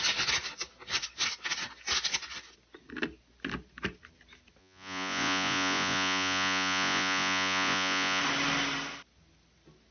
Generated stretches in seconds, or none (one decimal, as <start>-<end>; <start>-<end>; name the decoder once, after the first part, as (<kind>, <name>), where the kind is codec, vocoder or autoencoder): 4.6-8.2 (vocoder, Vocos)